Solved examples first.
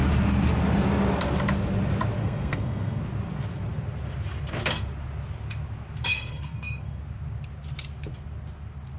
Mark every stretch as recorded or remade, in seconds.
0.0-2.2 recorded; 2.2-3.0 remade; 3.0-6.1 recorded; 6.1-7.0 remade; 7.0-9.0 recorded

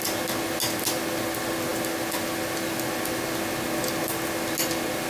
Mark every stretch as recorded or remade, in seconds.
0.0-5.1 recorded

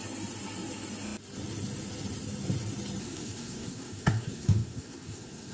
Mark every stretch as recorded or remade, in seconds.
0.0-3.0 recorded; 3.0-5.5 remade

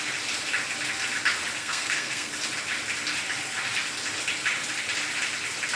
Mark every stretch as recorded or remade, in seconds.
0.0-1.6 recorded; 1.6-2.3 remade; 2.3-5.8 recorded

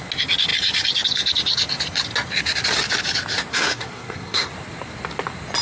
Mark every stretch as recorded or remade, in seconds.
0.0-3.5 recorded; 3.5-4.5 remade; 4.5-5.6 recorded

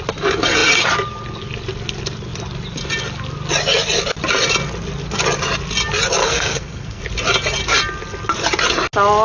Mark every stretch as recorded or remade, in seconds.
0.0-6.2 recorded; 6.2-7.0 remade; 7.0-9.2 recorded

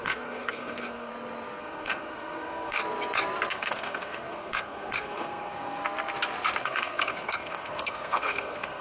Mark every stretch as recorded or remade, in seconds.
0.0-1.1 remade; 1.1-1.6 recorded; 1.6-2.8 remade; 2.8-3.5 recorded; 3.5-5.8 remade; 5.8-6.6 recorded; 6.6-8.8 remade

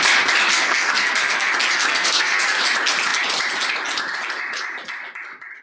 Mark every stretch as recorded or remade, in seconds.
0.0-0.5 recorded; 0.5-1.5 remade; 1.5-1.9 recorded; 1.9-2.6 remade; 2.6-5.6 recorded